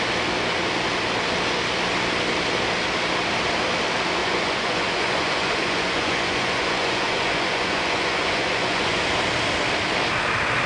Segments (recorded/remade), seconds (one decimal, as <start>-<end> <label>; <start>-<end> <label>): 0.0-4.2 recorded; 4.2-9.0 remade; 9.0-10.7 recorded